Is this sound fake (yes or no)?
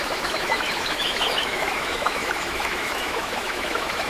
yes